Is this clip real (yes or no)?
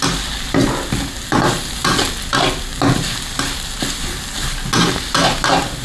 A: yes